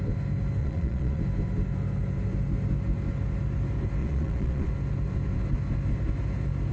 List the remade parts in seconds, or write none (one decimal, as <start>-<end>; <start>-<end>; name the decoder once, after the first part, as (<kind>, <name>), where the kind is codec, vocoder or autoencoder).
0.6-1.2 (vocoder, Vocos); 4.0-4.7